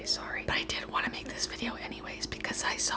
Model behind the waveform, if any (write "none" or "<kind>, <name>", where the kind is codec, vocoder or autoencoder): none